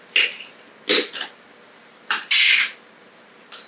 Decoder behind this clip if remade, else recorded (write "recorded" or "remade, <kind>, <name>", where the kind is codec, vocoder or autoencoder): recorded